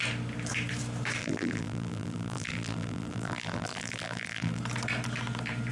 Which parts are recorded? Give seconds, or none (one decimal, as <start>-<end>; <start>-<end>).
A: 0.0-1.2; 4.6-5.7